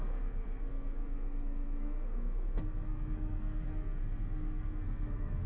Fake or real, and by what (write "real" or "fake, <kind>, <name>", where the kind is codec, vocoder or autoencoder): fake, codec, SNAC